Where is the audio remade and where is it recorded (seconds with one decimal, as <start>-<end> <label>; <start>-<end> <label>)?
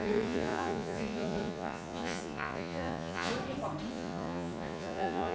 0.0-3.3 remade; 3.3-3.9 recorded; 3.9-5.3 remade